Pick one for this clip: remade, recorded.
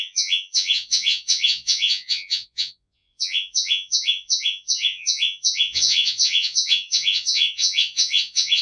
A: remade